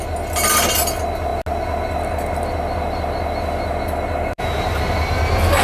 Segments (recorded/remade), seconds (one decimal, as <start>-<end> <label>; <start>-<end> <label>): 0.0-5.6 recorded